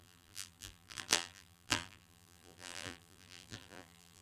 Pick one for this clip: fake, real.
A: fake